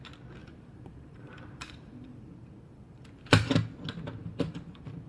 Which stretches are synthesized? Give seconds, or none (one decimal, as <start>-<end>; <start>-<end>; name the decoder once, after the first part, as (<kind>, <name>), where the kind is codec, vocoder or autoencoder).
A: 0.4-3.5 (vocoder, BigVGAN v2); 4.2-5.1